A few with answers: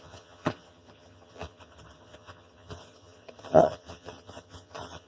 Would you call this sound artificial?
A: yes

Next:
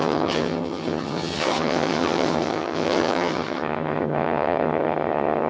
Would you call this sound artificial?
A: yes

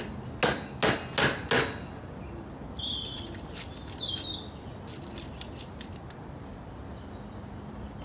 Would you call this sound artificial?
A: no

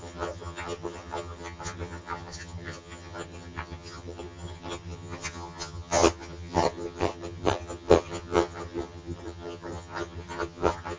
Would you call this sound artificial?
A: yes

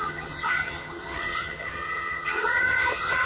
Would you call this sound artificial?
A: yes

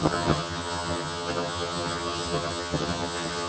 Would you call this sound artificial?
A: yes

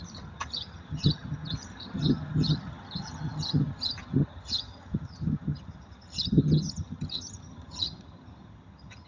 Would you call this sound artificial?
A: yes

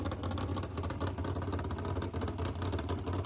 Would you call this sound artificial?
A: no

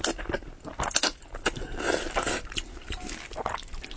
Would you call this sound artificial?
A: no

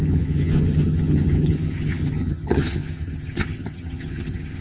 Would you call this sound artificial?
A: yes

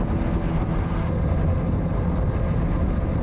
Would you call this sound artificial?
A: no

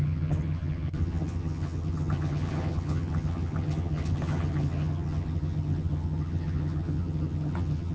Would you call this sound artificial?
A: yes